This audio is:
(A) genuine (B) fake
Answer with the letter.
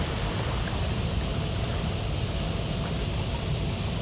A